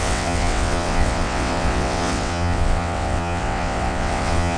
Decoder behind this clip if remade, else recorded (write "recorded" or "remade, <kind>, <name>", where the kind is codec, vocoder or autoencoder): remade, vocoder, WaveNeXt